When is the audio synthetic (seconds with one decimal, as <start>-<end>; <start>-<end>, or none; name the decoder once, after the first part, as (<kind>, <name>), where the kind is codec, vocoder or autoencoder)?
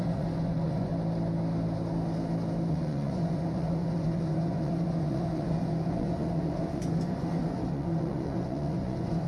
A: 0.0-0.9 (vocoder, Vocos); 2.7-9.3